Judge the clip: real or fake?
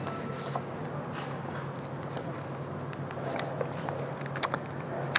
real